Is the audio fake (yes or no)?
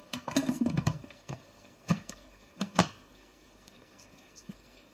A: yes